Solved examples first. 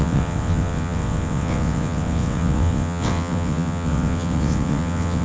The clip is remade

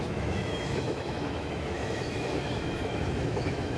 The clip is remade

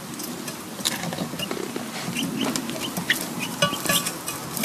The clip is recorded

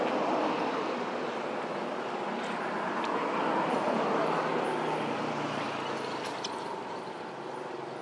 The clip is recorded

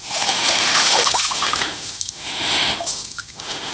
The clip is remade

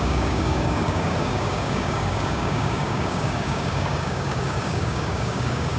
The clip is remade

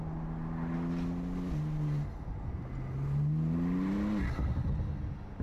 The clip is recorded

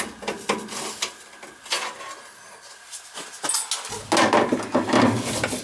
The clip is recorded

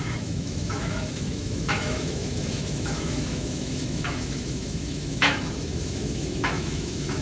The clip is remade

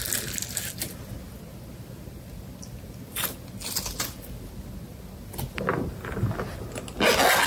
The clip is recorded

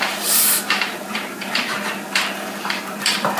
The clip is remade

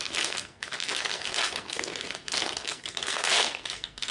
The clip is remade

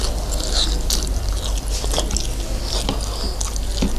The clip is recorded